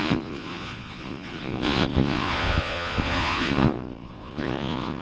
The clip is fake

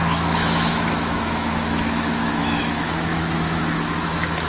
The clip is fake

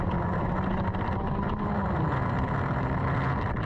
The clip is real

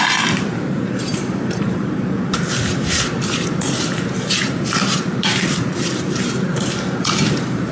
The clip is fake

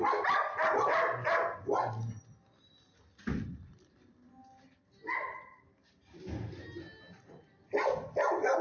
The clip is real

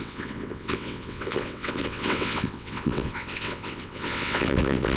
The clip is fake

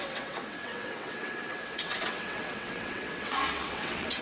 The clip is fake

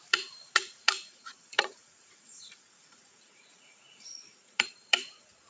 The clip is fake